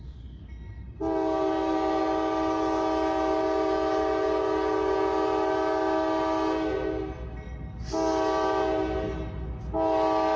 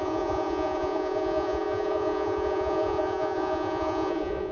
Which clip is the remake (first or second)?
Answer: second